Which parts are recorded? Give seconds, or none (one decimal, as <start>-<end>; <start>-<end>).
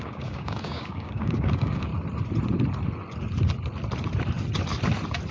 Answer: 1.9-5.3